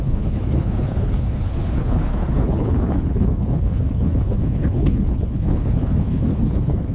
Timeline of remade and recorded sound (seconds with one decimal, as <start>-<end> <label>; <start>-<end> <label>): 0.0-6.9 remade